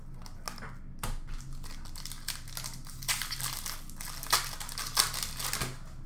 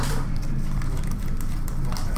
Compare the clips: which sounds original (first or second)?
first